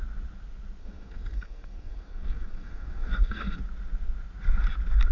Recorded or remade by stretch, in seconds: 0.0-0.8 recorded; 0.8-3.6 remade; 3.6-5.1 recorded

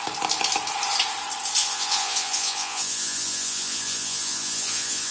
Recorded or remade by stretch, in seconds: 0.0-1.6 recorded; 1.6-5.1 remade

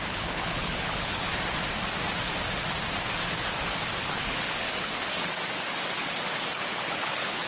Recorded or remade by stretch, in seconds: 0.0-1.3 remade; 1.3-4.0 recorded; 4.0-5.3 remade; 5.3-6.5 recorded; 6.5-7.5 remade